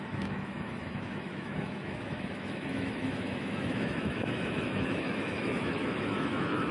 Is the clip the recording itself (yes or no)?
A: no